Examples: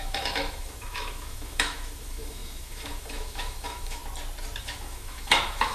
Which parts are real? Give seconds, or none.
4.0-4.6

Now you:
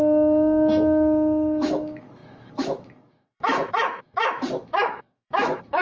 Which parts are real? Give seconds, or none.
none